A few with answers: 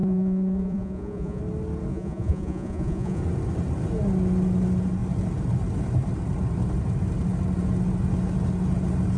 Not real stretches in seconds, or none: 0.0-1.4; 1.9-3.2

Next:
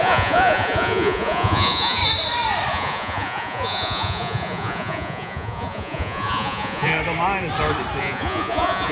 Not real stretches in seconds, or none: 0.0-2.0; 2.7-6.9; 8.0-8.9

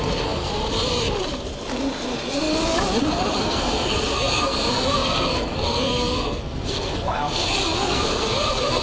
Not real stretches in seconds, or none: 0.0-0.5; 3.4-8.8

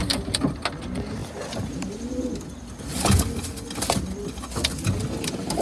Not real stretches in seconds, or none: none

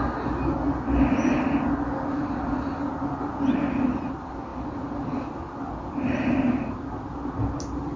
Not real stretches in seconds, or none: none

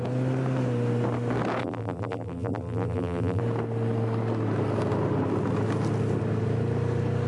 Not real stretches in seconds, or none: 1.6-3.4

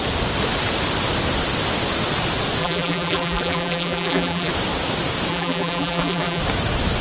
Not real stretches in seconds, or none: 2.6-4.5; 5.3-6.4

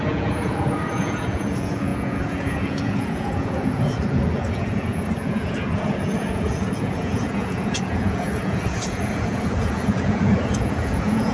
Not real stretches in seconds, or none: 0.0-11.3